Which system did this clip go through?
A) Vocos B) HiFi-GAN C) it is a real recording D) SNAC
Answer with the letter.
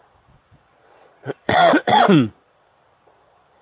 A